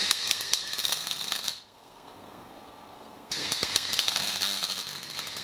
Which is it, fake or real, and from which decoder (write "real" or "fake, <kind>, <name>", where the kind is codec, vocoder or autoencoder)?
fake, codec, SNAC